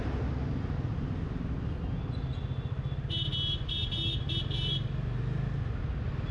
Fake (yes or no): no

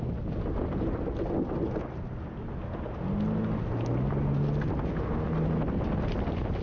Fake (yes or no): no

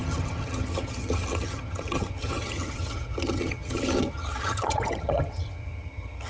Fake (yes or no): yes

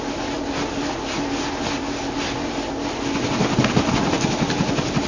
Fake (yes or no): no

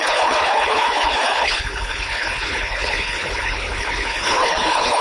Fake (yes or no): yes